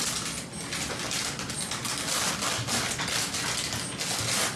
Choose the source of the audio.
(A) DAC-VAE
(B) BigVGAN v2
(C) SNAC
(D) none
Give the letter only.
D